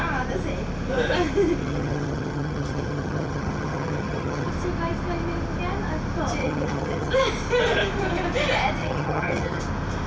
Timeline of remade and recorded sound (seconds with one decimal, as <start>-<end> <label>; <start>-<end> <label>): 0.0-1.6 recorded; 1.6-4.5 remade; 4.5-6.4 recorded; 6.4-7.1 remade; 7.1-8.8 recorded; 8.8-9.6 remade; 9.6-10.1 recorded